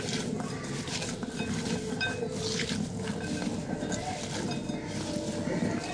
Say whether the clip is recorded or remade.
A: recorded